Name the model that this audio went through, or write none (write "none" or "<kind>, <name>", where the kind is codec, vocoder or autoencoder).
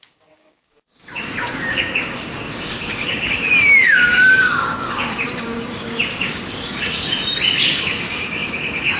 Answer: codec, DAC